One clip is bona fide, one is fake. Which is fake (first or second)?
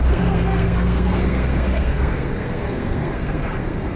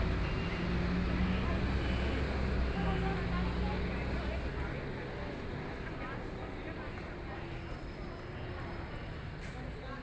first